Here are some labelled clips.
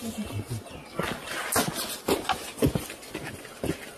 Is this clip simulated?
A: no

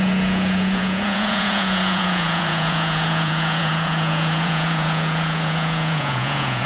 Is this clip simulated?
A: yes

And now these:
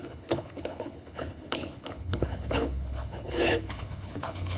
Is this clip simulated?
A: yes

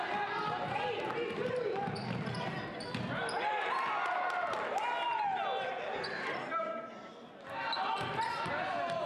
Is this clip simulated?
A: no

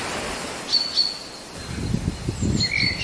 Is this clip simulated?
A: no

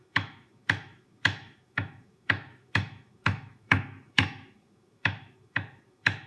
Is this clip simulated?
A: yes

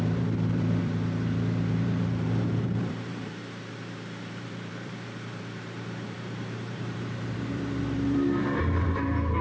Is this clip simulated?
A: yes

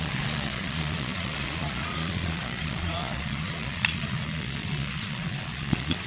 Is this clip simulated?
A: yes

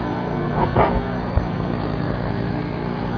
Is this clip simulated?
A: yes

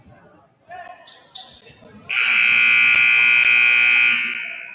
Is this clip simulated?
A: no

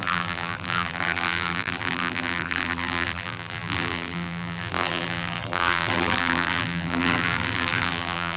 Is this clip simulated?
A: yes